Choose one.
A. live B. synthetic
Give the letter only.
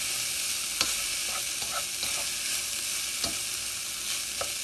A